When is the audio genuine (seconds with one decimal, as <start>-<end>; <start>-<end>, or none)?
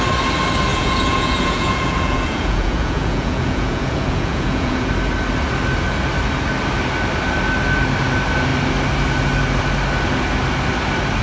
0.0-0.7; 4.9-11.2